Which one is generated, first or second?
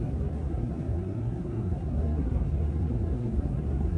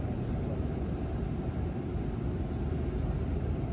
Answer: first